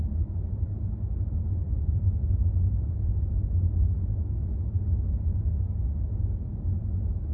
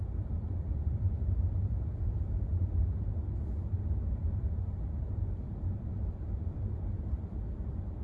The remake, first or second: second